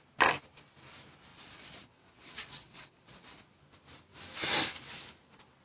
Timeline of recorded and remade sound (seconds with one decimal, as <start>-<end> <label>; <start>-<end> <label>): 0.0-1.3 recorded; 1.3-3.4 remade; 3.4-5.6 recorded